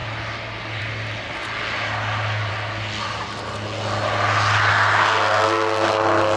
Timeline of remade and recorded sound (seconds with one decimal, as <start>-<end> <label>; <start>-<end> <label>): 0.0-4.7 recorded; 4.7-5.9 remade; 5.9-6.4 recorded